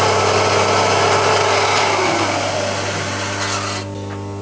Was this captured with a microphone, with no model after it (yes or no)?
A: yes